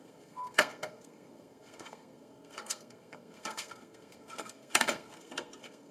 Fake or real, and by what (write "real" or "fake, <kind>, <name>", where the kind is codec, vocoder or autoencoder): fake, codec, SNAC